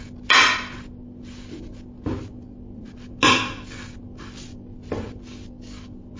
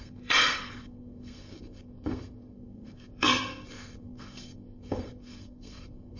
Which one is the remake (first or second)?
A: second